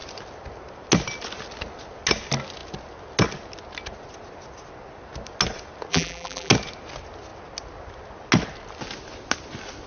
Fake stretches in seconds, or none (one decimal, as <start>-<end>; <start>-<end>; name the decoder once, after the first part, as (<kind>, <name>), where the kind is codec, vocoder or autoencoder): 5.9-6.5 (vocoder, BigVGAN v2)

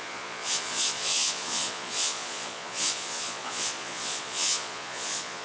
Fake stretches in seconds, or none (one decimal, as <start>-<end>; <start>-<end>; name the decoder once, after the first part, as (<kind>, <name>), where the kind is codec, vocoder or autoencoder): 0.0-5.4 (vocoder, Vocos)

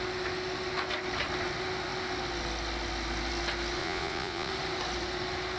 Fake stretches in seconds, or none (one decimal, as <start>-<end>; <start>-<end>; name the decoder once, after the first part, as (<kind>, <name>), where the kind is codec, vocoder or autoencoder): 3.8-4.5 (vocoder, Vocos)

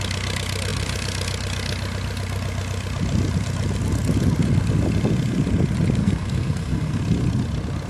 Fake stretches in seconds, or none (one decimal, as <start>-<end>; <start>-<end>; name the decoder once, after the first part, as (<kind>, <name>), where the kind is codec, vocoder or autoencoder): 6.0-7.0 (codec, SNAC)